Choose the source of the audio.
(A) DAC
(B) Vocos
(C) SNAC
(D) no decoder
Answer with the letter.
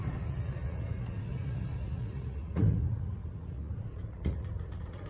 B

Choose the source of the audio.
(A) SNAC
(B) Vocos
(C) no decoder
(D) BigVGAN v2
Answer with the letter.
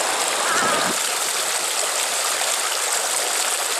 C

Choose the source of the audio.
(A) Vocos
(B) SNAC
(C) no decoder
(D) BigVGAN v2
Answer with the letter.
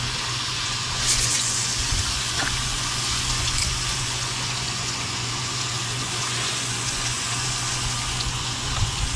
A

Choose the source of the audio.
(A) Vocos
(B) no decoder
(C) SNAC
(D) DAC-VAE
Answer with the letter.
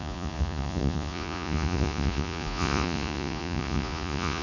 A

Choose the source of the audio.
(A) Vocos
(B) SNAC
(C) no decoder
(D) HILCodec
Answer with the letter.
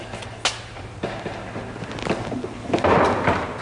C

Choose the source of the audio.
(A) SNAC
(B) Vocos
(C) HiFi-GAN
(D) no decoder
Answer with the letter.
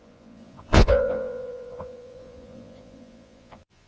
B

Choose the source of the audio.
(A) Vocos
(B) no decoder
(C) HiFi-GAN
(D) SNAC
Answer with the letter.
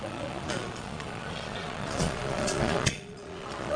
A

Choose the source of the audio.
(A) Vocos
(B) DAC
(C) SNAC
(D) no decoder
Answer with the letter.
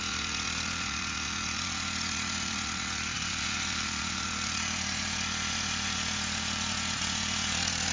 A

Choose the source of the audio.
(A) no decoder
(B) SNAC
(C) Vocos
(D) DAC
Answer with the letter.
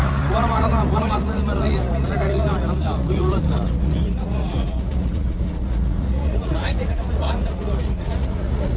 C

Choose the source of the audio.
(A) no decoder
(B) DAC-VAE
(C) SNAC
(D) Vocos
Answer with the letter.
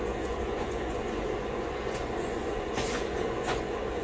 D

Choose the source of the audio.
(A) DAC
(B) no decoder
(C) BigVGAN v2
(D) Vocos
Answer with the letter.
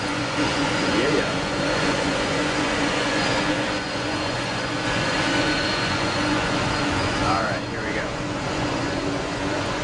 D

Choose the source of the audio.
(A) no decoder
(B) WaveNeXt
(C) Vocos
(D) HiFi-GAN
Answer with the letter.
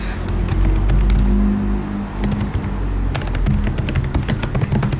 A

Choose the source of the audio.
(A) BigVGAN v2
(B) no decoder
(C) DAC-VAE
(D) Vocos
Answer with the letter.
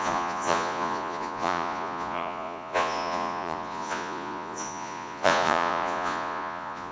D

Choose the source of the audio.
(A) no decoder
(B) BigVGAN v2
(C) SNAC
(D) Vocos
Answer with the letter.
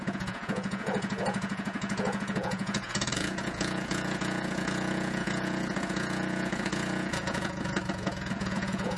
D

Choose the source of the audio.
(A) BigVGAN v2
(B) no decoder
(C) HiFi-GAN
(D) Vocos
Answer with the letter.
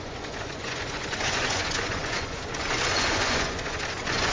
D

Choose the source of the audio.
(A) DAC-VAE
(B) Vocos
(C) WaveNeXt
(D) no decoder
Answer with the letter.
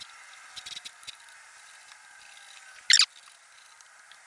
D